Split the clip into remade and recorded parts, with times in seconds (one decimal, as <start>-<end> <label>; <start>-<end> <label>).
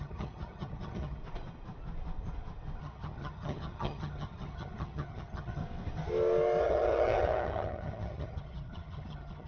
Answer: 0.0-1.2 remade; 1.2-2.8 recorded; 2.8-5.6 remade; 5.6-6.6 recorded; 6.6-9.5 remade